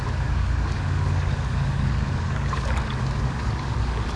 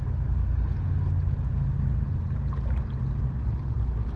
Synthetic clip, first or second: first